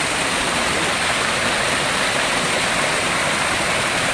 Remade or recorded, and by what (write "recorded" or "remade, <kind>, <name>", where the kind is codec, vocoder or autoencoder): recorded